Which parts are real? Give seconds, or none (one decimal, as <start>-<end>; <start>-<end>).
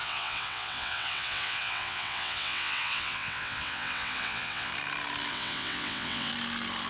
4.7-5.3; 6.3-6.9